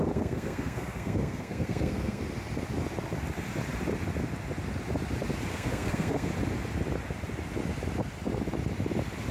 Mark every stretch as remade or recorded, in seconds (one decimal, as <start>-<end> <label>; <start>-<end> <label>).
0.0-2.2 remade; 2.2-5.5 recorded; 5.5-6.3 remade; 6.3-9.3 recorded